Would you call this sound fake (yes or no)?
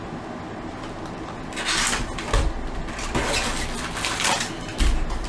no